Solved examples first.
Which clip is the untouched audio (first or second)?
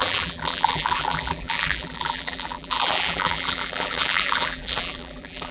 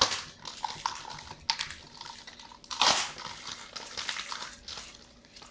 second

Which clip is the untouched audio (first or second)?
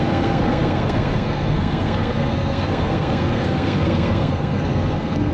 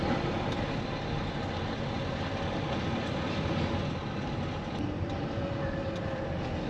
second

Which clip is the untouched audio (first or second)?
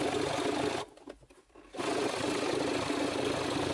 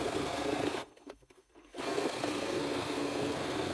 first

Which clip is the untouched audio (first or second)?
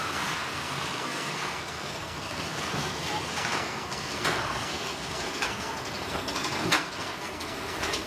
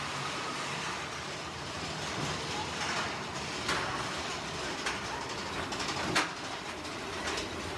second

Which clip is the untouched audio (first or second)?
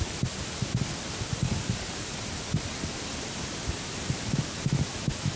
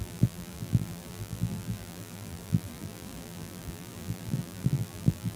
first